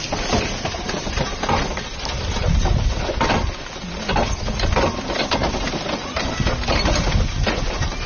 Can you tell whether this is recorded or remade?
recorded